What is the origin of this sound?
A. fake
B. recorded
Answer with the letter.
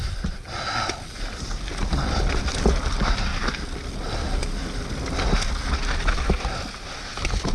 B